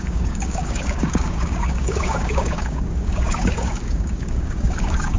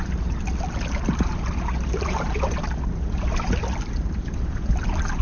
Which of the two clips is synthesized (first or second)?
first